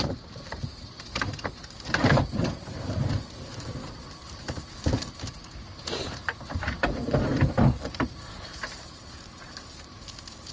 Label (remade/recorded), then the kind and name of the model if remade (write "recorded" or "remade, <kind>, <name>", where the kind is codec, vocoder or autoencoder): remade, vocoder, BigVGAN v2